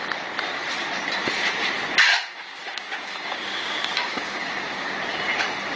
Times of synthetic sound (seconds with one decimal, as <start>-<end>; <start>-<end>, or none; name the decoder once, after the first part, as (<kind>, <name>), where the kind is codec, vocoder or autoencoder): 2.1-4.9 (codec, DAC)